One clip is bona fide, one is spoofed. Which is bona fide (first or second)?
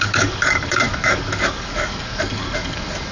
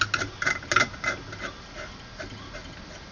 second